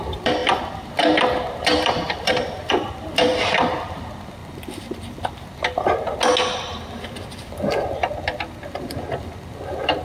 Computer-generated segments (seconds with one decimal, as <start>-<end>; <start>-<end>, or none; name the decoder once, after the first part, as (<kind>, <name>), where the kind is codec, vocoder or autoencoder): 0.0-4.4 (vocoder, BigVGAN v2); 8.7-10.0

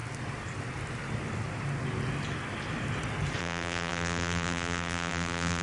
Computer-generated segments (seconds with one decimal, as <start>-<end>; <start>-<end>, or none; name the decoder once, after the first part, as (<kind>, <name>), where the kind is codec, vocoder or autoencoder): 3.4-5.6 (vocoder, BigVGAN v2)

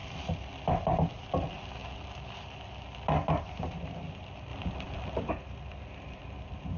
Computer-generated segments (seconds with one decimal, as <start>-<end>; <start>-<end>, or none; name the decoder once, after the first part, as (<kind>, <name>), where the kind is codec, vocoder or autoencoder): 0.5-1.8 (vocoder, BigVGAN v2); 3.4-6.8

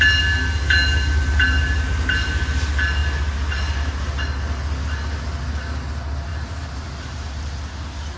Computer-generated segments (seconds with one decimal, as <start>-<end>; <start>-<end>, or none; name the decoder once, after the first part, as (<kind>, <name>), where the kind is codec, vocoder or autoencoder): 6.3-7.5 (vocoder, BigVGAN v2)

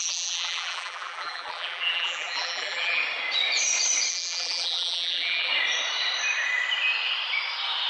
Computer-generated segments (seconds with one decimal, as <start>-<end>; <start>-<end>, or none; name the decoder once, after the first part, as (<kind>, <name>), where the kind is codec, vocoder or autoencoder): 0.0-3.0 (vocoder, BigVGAN v2); 4.1-5.5

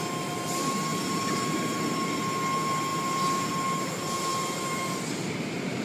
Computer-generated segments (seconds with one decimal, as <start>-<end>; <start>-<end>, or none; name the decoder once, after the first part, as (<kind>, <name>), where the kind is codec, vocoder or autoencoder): 0.9-2.2 (vocoder, BigVGAN v2)

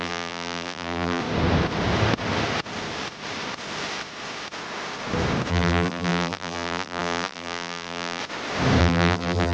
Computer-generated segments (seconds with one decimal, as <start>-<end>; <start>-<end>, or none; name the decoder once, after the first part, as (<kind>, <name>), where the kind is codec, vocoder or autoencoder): 0.0-1.2 (vocoder, BigVGAN v2); 5.5-8.2; 8.8-9.5

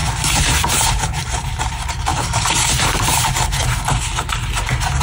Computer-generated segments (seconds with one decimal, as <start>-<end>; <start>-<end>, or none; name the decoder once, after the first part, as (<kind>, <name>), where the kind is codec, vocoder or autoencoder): 0.0-1.6 (vocoder, BigVGAN v2); 2.1-3.3